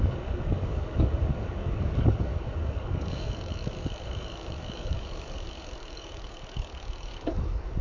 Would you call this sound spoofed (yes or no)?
yes